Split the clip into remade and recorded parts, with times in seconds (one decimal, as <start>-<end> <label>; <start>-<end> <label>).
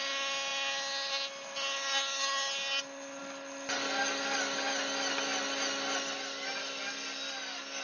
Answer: 0.0-7.8 recorded